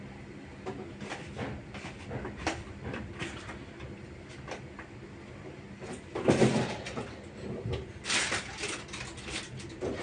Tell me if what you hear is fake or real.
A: real